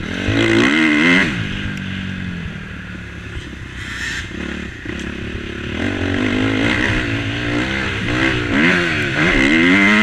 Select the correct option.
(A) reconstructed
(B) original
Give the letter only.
B